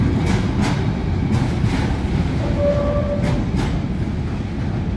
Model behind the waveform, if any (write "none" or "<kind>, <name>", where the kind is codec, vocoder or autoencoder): none